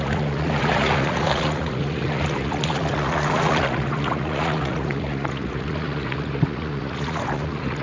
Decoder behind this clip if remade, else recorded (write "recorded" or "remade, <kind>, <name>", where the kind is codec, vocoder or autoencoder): remade, vocoder, Vocos